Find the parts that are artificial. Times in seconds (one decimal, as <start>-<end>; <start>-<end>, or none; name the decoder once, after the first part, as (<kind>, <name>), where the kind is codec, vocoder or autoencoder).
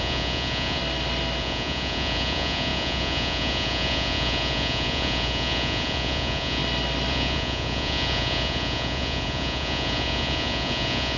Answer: 0.0-0.8 (vocoder, Vocos); 1.4-6.6; 7.1-11.2